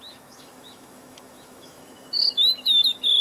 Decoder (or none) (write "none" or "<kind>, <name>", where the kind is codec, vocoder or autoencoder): autoencoder, DAC-VAE